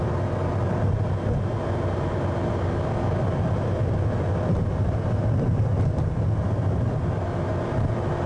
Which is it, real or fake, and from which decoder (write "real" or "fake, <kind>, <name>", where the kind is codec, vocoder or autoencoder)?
real